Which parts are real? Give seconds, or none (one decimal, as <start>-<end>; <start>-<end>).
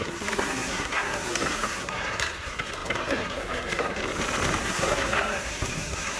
4.0-4.6